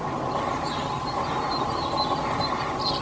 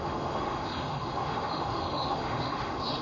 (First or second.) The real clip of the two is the first